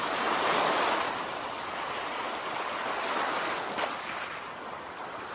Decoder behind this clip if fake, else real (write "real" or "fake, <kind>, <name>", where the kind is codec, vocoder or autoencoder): real